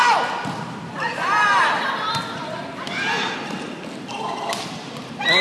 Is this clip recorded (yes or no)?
yes